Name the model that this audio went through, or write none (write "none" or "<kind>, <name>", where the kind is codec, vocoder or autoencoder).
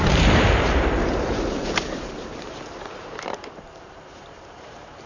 vocoder, BigVGAN v2